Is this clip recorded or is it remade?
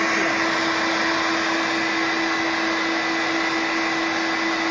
recorded